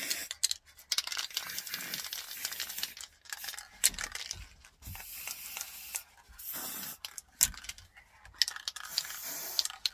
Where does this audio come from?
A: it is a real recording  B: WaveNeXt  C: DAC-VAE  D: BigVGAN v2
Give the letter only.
A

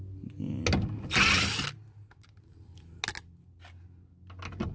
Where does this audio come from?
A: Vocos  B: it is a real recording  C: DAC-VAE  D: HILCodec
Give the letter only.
B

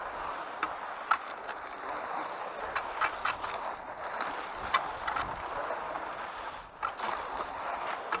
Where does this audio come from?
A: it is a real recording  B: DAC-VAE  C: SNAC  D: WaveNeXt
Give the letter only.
A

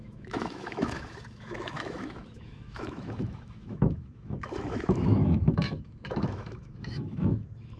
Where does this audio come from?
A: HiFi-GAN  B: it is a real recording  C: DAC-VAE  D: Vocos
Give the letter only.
C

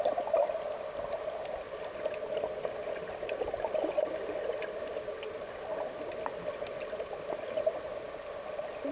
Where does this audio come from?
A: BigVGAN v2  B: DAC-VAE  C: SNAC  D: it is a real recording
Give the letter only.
D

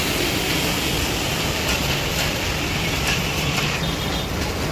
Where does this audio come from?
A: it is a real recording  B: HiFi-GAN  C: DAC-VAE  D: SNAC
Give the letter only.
A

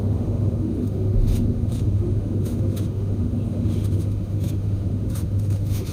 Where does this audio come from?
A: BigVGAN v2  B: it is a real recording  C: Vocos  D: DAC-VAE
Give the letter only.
D